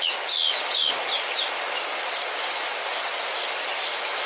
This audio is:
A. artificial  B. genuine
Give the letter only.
B